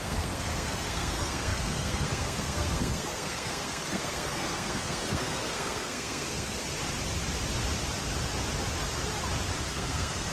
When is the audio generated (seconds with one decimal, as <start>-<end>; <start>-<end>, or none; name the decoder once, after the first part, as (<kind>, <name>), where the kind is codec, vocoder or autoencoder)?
0.0-6.6 (codec, SNAC); 9.7-10.3